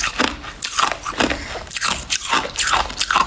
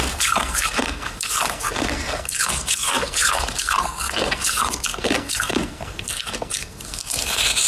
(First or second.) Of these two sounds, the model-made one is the second